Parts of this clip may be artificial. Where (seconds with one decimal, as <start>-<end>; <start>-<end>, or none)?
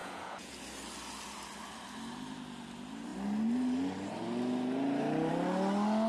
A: 0.0-0.5